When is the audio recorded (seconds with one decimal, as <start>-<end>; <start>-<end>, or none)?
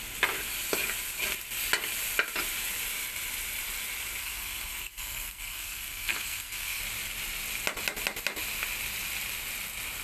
0.0-4.2; 6.8-10.0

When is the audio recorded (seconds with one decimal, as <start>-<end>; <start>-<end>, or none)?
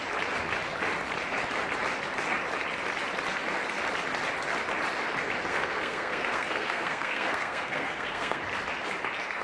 0.0-5.5; 8.4-9.4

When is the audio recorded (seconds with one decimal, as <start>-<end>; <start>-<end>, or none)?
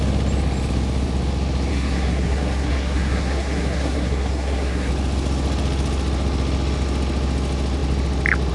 0.0-1.7; 4.9-8.5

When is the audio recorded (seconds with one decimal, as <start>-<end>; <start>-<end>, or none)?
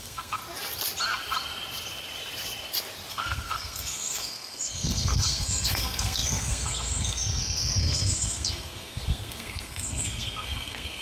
0.4-3.1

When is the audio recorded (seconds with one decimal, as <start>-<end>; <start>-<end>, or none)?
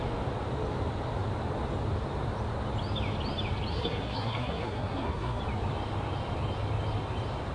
0.0-3.7; 5.4-7.5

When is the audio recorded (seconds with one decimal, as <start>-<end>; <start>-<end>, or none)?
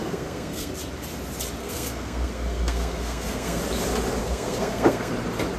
0.7-1.6; 3.6-4.2; 5.1-5.6